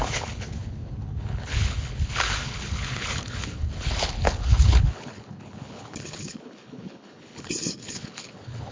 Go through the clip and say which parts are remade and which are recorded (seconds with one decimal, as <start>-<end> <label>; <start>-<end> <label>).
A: 0.0-8.7 remade